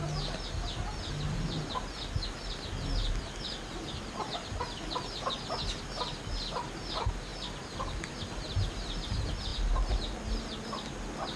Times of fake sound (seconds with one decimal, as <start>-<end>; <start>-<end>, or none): none